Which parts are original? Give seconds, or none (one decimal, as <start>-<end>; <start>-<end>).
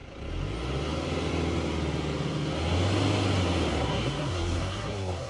0.0-3.7